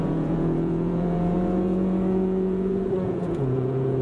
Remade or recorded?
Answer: remade